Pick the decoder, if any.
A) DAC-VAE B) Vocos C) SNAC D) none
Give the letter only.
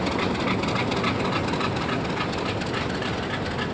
D